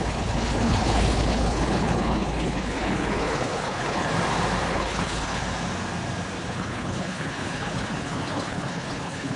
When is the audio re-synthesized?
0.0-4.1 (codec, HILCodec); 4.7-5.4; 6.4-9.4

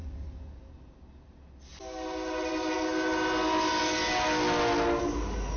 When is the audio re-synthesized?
none

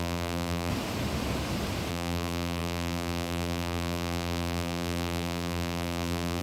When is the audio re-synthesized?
0.0-0.7 (vocoder, BigVGAN v2); 1.9-6.4

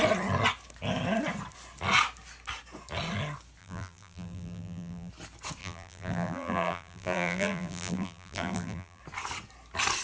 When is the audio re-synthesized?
3.6-5.1 (vocoder, BigVGAN v2); 5.6-9.0

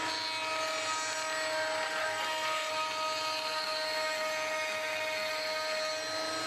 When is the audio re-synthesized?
2.0-2.7 (codec, SNAC)

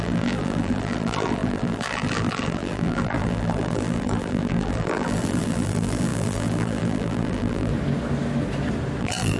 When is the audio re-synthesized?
0.0-7.7 (vocoder, BigVGAN v2); 9.0-9.4